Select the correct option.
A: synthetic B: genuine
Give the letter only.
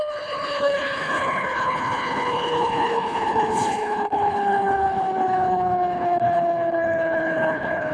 A